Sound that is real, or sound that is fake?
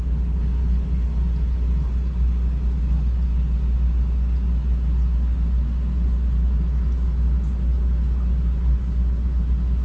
real